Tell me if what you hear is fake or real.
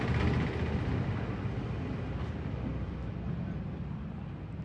real